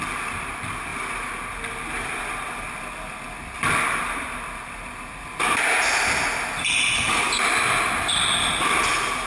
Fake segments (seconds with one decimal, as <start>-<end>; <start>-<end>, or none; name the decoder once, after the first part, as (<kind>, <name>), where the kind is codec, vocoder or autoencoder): none